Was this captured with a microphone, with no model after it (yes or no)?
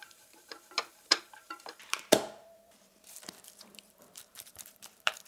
no